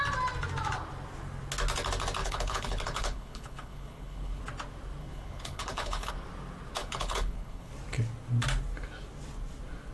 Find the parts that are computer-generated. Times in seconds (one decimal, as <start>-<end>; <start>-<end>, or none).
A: 2.2-4.4; 5.0-6.1; 6.8-7.7